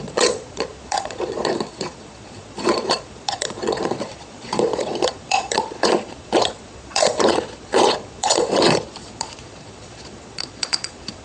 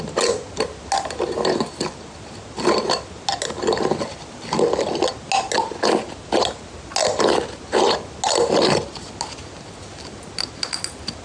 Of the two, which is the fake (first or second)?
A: first